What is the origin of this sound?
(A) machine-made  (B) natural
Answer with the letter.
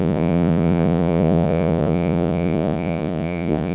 A